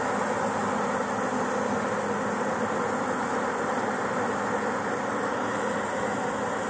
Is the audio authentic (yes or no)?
yes